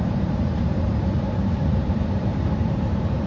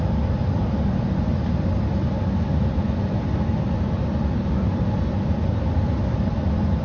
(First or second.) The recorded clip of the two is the second